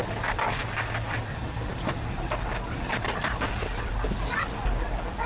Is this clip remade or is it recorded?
recorded